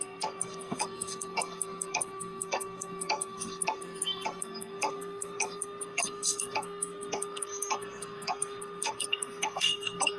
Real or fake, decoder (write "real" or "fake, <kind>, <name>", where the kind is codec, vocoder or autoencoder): fake, codec, SNAC